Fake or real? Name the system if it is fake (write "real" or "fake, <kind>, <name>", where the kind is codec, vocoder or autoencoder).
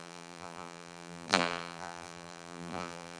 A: fake, vocoder, BigVGAN v2